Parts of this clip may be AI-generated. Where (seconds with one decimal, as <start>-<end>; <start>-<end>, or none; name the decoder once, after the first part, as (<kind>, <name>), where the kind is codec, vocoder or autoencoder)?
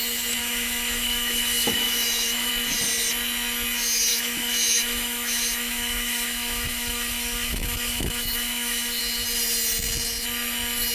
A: 0.4-2.5 (autoencoder, DAC-VAE); 4.1-9.0